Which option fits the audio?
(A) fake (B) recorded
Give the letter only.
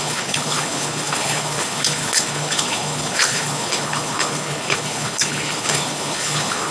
A